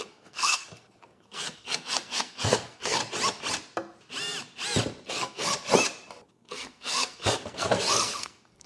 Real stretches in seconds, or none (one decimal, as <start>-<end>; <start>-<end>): 3.0-5.1; 5.5-6.3